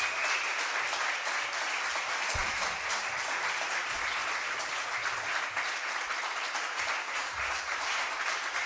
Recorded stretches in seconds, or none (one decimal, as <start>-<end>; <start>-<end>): 0.0-2.4; 2.9-4.2